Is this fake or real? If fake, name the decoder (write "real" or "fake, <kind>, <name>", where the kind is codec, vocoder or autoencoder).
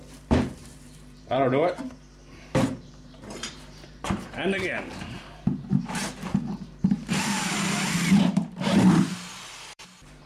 fake, vocoder, BigVGAN v2